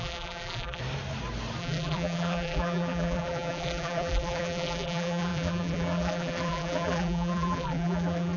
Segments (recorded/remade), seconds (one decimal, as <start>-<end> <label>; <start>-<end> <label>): 0.0-0.8 remade; 0.8-1.6 recorded; 1.6-8.4 remade